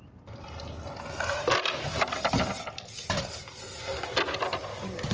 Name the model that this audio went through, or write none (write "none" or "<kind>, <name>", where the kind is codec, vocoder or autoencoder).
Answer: none